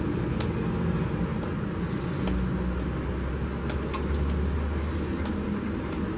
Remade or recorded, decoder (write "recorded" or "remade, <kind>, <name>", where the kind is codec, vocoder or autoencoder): recorded